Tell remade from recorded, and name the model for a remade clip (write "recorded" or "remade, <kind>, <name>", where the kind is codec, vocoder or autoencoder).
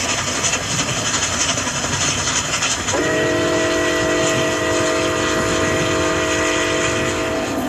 recorded